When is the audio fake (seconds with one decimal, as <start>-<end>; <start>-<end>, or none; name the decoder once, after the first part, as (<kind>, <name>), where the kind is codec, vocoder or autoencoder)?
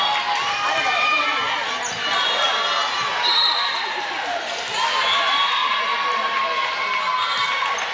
none